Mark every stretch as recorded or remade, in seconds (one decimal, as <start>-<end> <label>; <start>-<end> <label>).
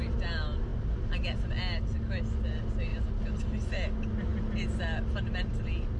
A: 0.0-2.9 recorded; 2.9-3.4 remade; 3.4-6.0 recorded